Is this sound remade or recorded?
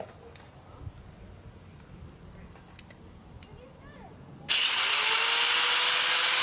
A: recorded